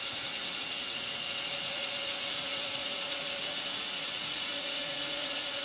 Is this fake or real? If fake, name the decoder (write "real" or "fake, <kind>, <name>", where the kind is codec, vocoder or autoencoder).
fake, vocoder, Vocos